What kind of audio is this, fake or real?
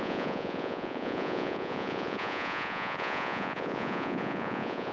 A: fake